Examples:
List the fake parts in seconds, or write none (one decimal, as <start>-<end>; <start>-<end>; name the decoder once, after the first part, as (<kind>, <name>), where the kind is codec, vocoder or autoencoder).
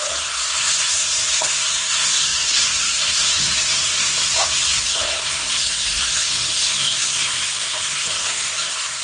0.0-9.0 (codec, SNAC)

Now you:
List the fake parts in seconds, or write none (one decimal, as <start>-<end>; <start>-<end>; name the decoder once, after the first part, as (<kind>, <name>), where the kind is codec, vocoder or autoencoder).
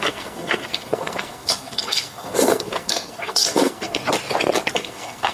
0.0-4.0 (codec, SNAC); 4.7-5.3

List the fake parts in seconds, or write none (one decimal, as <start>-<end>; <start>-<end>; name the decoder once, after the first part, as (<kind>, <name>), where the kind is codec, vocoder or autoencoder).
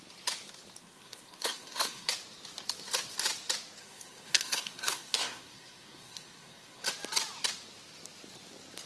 0.8-2.1 (codec, SNAC); 3.8-6.9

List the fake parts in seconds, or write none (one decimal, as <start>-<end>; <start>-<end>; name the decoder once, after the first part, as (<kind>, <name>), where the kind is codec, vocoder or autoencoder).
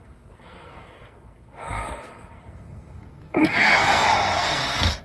0.0-5.0 (codec, SNAC)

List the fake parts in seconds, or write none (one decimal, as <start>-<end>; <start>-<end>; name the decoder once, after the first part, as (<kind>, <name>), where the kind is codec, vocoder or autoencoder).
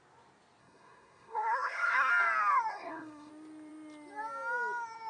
0.6-2.1 (codec, SNAC); 2.7-3.3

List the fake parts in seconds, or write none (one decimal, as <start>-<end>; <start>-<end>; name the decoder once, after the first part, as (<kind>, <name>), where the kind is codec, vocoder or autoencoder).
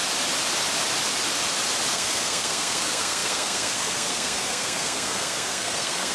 1.9-6.1 (codec, SNAC)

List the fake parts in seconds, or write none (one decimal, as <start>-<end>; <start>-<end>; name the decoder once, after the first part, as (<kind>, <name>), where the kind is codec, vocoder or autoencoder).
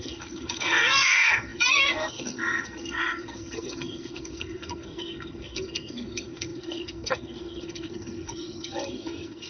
0.0-9.5 (codec, SNAC)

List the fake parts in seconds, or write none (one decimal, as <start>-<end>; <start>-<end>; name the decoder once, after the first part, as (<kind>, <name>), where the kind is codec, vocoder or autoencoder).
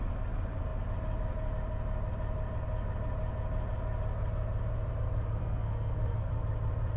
5.4-6.3 (codec, SNAC)